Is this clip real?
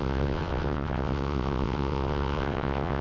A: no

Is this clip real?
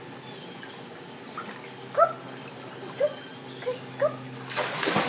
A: yes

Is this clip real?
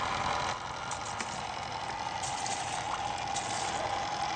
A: yes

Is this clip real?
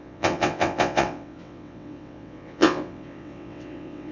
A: no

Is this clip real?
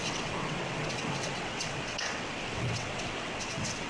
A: no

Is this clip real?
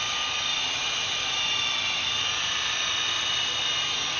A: yes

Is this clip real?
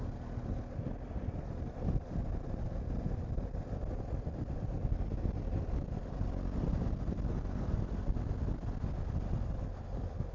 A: yes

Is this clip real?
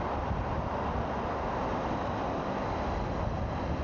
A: yes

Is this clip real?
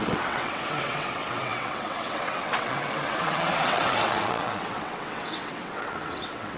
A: no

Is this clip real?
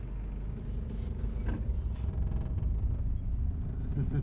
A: yes